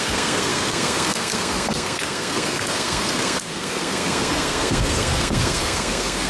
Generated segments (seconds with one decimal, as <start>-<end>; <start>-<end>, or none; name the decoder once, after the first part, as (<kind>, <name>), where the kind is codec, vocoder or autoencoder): 0.0-6.3 (codec, SNAC)